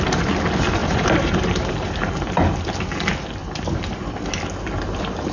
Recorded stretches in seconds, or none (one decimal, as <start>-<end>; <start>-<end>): 0.0-0.8; 2.4-3.4; 4.0-5.3